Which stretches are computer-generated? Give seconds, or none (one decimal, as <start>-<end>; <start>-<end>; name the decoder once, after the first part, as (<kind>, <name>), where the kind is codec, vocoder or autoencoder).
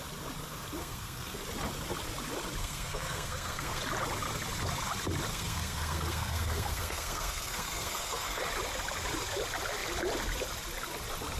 0.8-1.4 (codec, SNAC); 2.6-3.8; 5.3-8.4